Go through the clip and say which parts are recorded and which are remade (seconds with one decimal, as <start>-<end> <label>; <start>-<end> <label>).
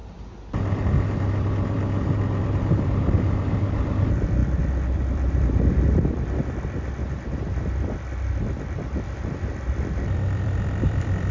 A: 0.0-0.8 recorded; 0.8-4.4 remade; 4.4-5.0 recorded; 5.0-7.0 remade; 7.0-8.6 recorded; 8.6-11.3 remade